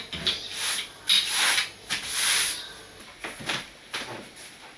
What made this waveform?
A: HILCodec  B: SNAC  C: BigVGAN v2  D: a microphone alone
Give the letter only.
D